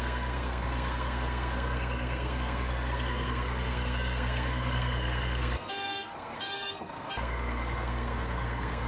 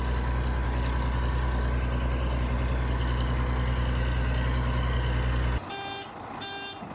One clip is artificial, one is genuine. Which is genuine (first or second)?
second